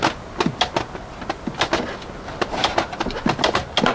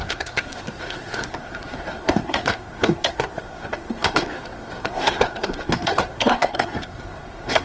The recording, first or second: first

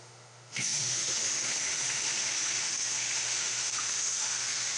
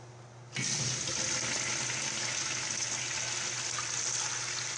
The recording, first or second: second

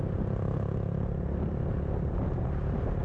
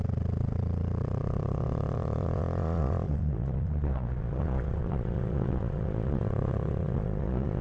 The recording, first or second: first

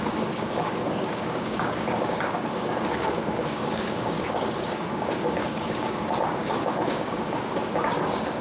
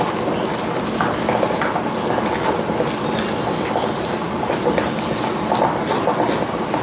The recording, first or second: second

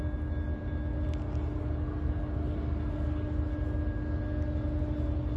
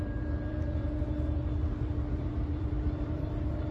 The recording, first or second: first